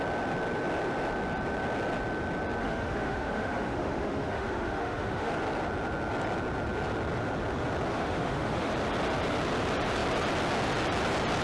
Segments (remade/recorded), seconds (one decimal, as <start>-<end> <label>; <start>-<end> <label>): 0.0-2.6 recorded; 2.6-5.3 remade; 5.3-7.9 recorded; 7.9-8.7 remade; 8.7-11.4 recorded